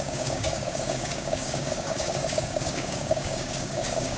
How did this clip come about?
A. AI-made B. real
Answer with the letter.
A